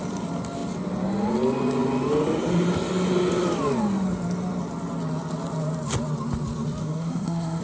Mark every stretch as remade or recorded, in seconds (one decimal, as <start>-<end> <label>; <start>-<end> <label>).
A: 0.0-6.8 recorded; 6.8-7.6 remade